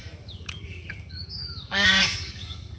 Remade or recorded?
remade